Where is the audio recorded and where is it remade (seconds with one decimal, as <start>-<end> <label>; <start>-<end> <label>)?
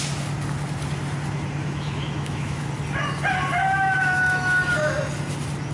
0.0-1.6 recorded; 1.6-2.7 remade; 2.7-3.6 recorded; 3.6-4.6 remade; 4.6-5.7 recorded